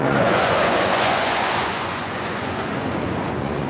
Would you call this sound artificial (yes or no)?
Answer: yes